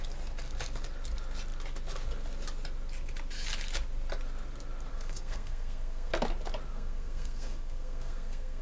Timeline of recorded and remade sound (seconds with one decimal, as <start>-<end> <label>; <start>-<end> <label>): 0.0-4.9 recorded; 4.9-6.1 remade; 6.1-6.7 recorded; 6.7-8.6 remade